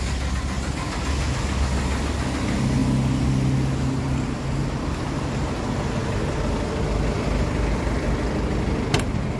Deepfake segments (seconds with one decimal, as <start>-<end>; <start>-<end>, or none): none